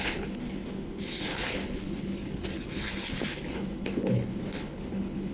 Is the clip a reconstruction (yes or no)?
yes